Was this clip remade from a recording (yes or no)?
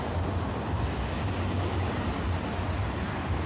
no